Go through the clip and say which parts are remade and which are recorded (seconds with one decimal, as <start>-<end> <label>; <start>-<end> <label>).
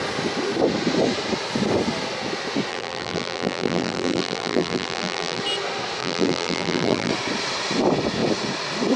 0.0-2.7 recorded; 2.7-5.4 remade; 5.4-6.0 recorded; 6.0-7.1 remade; 7.1-9.0 recorded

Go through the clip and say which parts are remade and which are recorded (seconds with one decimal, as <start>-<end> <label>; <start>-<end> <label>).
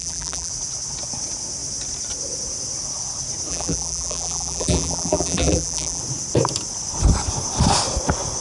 0.0-0.5 remade; 0.5-3.5 recorded; 3.5-6.0 remade; 6.0-8.4 recorded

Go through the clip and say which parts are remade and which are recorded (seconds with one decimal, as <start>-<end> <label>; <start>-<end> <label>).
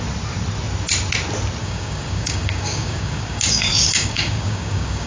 0.0-1.6 recorded; 1.6-5.1 remade